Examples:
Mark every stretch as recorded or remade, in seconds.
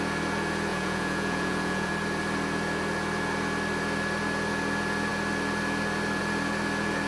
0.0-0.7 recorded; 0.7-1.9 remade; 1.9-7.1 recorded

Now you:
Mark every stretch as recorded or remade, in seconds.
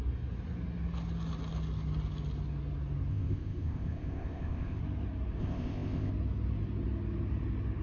0.0-3.1 recorded; 3.1-4.8 remade; 4.8-5.4 recorded; 5.4-6.1 remade; 6.1-7.8 recorded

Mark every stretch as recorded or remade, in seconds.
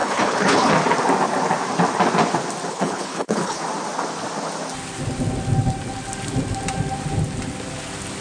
0.0-0.7 remade; 0.7-2.7 recorded; 2.7-3.6 remade; 3.6-8.2 recorded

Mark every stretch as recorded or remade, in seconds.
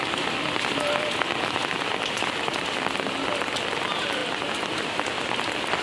0.0-5.8 recorded